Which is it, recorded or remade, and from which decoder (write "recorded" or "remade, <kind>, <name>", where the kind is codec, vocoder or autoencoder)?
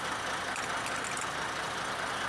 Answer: recorded